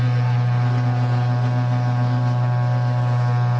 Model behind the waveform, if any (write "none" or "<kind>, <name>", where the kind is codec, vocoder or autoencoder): none